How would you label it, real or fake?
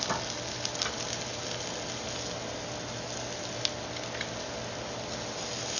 real